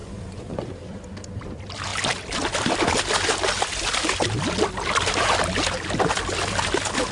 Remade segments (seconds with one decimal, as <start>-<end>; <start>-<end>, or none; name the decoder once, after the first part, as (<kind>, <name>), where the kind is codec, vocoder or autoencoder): 0.0-0.7 (vocoder, Vocos)